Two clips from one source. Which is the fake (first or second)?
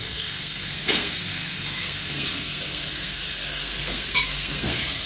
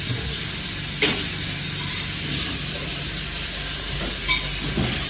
first